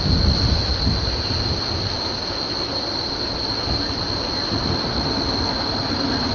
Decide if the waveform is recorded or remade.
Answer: recorded